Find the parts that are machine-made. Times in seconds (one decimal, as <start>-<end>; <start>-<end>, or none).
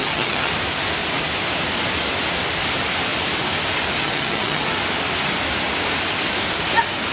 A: 0.0-0.5; 4.0-4.6